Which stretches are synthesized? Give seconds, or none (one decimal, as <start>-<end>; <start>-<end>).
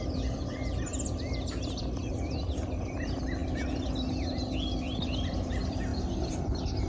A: none